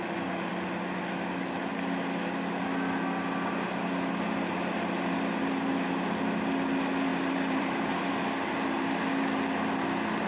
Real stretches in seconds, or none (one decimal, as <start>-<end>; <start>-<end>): 0.0-7.1; 8.1-10.3